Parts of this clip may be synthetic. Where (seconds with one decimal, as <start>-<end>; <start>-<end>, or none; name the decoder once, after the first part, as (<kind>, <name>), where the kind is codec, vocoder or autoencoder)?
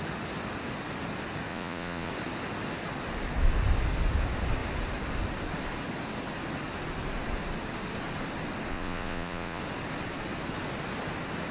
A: 1.5-2.1 (vocoder, Vocos); 8.7-9.6